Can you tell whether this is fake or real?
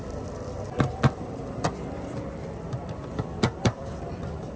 fake